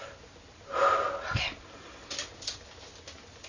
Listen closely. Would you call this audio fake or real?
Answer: real